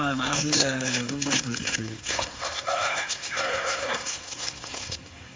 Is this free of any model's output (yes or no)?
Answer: no